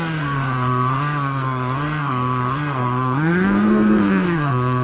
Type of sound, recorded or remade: remade